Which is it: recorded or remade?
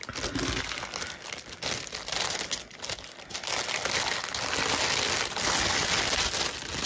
recorded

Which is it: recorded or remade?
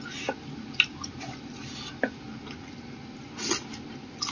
recorded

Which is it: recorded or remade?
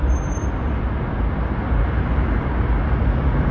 recorded